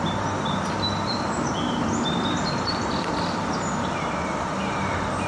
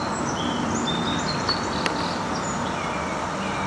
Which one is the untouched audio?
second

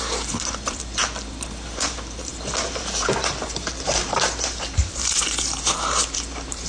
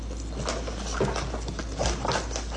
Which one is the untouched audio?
second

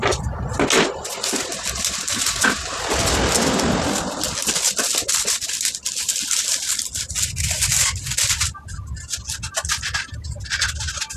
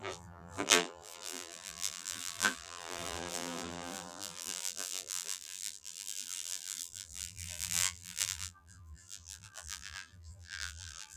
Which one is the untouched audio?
first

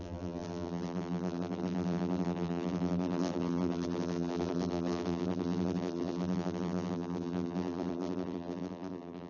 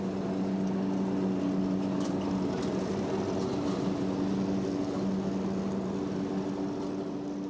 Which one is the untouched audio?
second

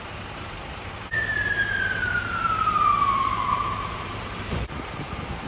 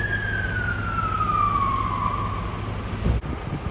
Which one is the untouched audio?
second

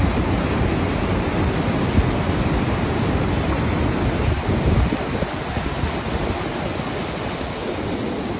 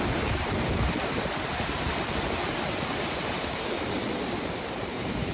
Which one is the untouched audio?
first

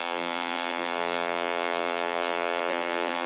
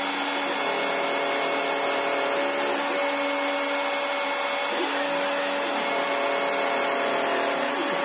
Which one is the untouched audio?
second